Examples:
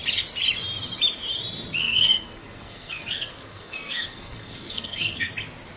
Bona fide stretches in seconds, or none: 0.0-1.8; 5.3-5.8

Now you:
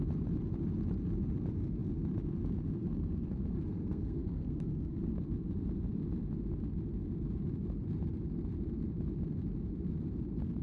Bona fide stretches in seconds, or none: 0.0-2.8; 5.1-10.6

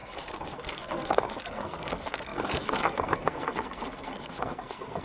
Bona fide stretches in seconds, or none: none

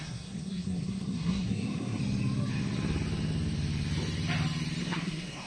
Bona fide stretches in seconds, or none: 2.0-4.8